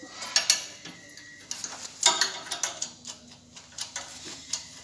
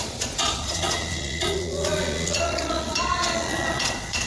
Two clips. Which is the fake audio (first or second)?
second